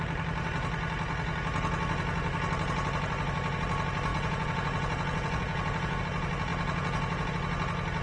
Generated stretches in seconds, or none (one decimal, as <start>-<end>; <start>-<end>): 4.1-6.0; 6.5-7.3